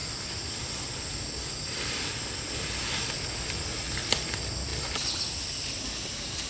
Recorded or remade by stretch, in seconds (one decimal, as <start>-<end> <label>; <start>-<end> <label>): 0.0-4.7 recorded; 4.7-5.2 remade; 5.2-6.5 recorded